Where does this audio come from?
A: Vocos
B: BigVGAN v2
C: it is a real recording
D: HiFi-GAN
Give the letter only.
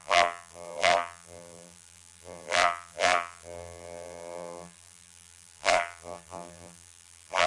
B